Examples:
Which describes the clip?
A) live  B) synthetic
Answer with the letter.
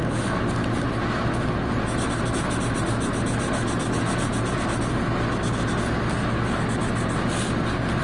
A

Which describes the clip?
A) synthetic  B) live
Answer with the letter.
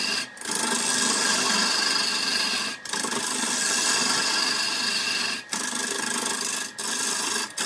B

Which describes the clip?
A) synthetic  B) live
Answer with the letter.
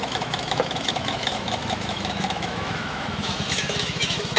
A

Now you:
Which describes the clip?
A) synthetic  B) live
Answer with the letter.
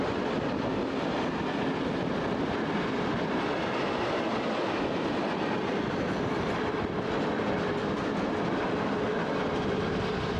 B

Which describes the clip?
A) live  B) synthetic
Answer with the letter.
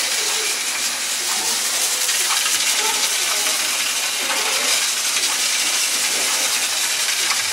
A